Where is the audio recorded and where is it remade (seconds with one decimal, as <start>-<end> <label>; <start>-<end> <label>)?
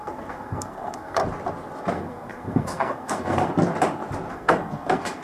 0.0-1.2 remade; 1.2-1.9 recorded; 1.9-3.5 remade; 3.5-4.3 recorded; 4.3-5.2 remade